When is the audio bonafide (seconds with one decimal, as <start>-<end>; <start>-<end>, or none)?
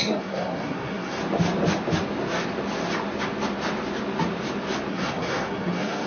1.2-4.9